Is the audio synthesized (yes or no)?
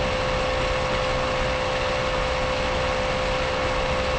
no